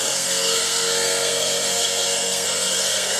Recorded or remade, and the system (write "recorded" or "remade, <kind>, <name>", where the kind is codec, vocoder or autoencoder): remade, codec, SNAC